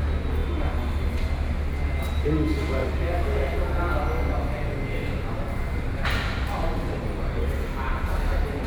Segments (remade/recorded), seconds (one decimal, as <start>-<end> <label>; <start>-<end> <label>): 0.0-8.7 recorded